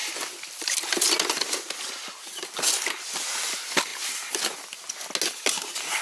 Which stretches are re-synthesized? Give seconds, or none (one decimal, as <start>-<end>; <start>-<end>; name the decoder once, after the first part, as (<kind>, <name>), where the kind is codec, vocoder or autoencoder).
none